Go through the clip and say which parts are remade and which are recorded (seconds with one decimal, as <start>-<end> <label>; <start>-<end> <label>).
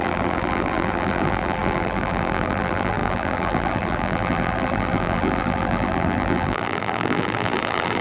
0.0-8.0 remade